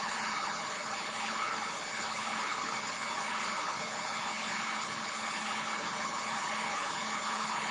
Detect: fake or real fake